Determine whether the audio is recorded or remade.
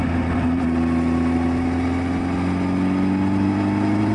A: recorded